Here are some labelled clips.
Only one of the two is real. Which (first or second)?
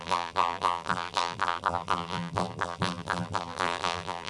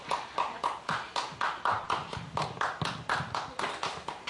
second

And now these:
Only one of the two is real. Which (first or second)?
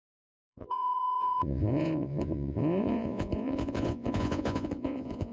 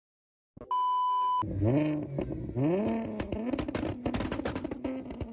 second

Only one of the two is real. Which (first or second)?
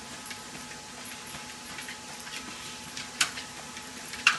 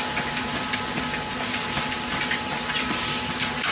second